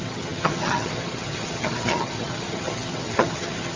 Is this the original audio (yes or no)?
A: no